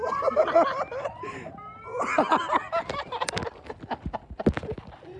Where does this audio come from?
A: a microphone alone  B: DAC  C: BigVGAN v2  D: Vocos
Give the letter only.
A